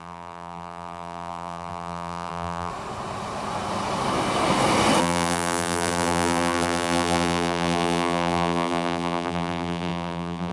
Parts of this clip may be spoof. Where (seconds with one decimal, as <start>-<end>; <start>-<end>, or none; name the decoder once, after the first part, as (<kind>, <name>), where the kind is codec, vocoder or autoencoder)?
0.0-2.7 (vocoder, BigVGAN v2); 5.0-10.5